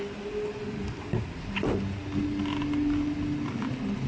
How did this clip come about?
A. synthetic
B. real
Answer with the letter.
B